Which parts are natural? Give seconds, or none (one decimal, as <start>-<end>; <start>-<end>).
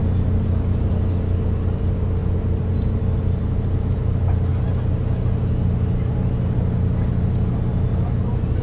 0.0-8.6